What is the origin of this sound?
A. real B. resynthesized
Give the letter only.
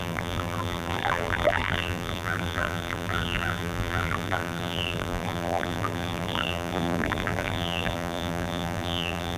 B